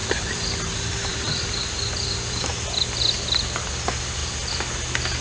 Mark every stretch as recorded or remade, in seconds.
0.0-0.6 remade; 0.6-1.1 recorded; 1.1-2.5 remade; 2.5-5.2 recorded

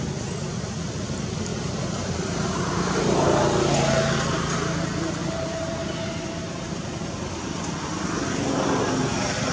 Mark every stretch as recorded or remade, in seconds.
0.0-1.5 recorded; 1.5-3.0 remade; 3.0-9.5 recorded

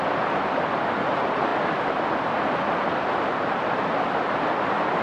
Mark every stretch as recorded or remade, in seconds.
0.0-5.0 recorded

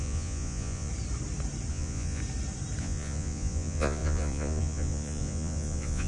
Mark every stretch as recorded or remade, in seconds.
0.0-0.9 remade; 0.9-1.7 recorded; 1.7-2.2 remade; 2.2-2.8 recorded; 2.8-6.1 remade

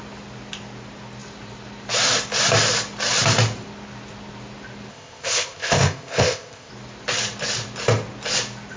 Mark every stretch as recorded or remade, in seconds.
0.0-4.9 recorded; 4.9-6.7 remade; 6.7-8.8 recorded